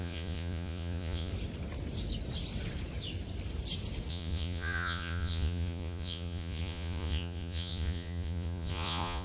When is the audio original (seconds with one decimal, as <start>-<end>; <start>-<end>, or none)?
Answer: 1.3-4.1